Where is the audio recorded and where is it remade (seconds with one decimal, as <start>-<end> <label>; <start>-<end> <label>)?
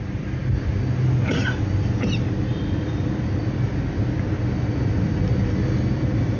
0.0-6.4 recorded